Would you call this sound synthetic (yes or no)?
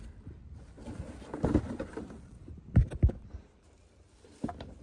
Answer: yes